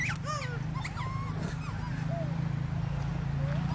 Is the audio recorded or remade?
recorded